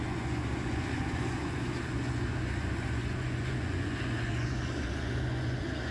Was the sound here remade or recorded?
remade